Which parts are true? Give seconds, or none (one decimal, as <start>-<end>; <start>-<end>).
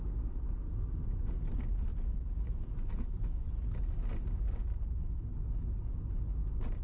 0.0-1.9; 2.9-6.8